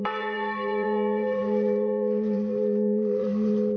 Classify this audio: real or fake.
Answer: fake